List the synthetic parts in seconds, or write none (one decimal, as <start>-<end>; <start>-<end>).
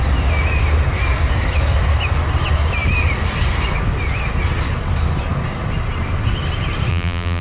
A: 6.9-7.4